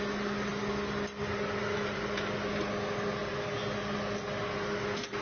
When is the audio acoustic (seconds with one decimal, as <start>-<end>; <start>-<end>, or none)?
0.0-5.2